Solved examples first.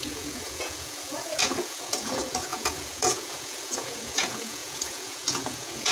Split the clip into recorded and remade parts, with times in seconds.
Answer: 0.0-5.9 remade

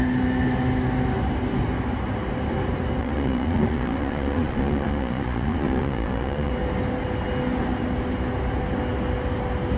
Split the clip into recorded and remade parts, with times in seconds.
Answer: 0.0-3.0 recorded; 3.0-6.5 remade; 6.5-9.8 recorded

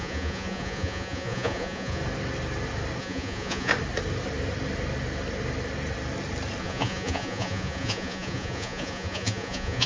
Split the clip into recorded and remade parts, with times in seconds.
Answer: 0.0-2.0 remade; 2.0-3.0 recorded; 3.0-3.7 remade; 3.7-6.6 recorded; 6.6-9.9 remade

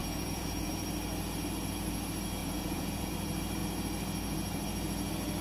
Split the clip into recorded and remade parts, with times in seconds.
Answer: 0.0-0.7 remade; 0.7-2.4 recorded; 2.4-3.1 remade; 3.1-5.4 recorded

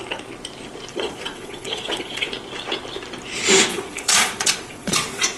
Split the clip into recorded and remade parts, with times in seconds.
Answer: 0.0-0.9 recorded; 0.9-2.3 remade; 2.3-3.7 recorded; 3.7-5.4 remade

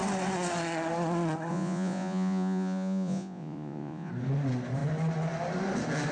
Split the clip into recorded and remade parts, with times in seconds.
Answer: 0.0-1.5 recorded; 1.5-4.1 remade; 4.1-6.1 recorded

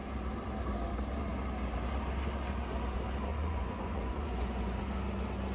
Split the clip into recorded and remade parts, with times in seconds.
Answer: 0.0-3.3 recorded; 3.3-4.8 remade; 4.8-5.5 recorded